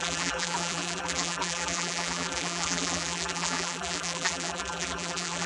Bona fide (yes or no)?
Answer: no